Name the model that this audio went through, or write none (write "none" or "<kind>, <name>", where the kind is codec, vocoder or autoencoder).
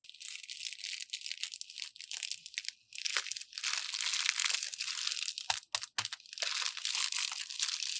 none